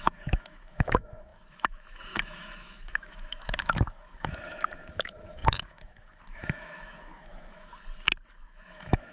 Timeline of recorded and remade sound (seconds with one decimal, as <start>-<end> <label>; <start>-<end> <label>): 0.0-7.7 remade; 7.7-8.3 recorded; 8.3-9.1 remade

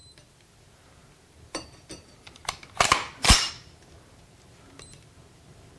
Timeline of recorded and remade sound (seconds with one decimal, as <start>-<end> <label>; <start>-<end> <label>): 0.0-5.8 recorded

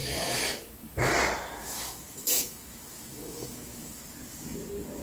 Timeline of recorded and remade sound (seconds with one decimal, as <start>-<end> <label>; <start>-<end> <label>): 0.0-1.1 remade; 1.1-1.6 recorded; 1.6-4.0 remade; 4.0-5.0 recorded